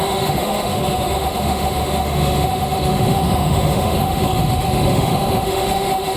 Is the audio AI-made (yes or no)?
yes